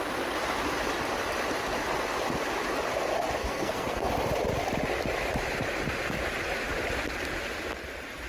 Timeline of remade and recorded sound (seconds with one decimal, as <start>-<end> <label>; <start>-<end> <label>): 0.0-3.4 recorded; 3.4-4.1 remade; 4.1-8.3 recorded

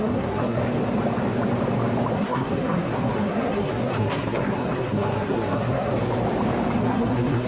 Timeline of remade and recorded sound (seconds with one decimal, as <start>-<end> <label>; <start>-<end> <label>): 0.0-0.6 remade; 0.6-2.1 recorded; 2.1-5.9 remade; 5.9-6.8 recorded; 6.8-7.5 remade

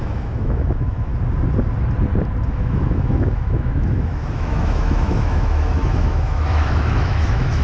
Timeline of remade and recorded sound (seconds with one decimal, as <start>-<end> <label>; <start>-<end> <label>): 0.0-1.1 remade; 1.1-2.5 recorded; 2.5-7.6 remade

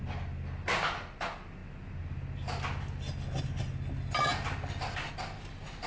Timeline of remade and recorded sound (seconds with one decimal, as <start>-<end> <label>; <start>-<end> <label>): 0.0-5.9 recorded

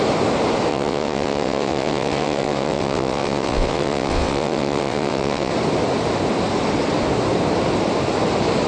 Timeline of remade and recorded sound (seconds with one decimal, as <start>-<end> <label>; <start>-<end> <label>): 0.0-0.7 recorded; 0.7-5.5 remade; 5.5-8.7 recorded

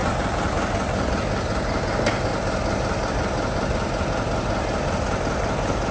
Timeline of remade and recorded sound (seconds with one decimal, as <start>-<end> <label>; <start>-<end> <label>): 0.0-5.9 recorded

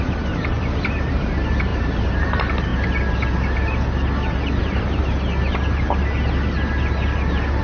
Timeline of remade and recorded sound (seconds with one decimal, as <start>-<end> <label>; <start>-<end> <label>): 0.0-2.7 remade; 2.7-4.6 recorded; 4.6-5.0 remade; 5.0-7.6 recorded